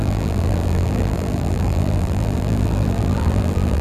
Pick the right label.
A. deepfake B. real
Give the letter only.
A